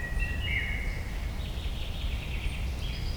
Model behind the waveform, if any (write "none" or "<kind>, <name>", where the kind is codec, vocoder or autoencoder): none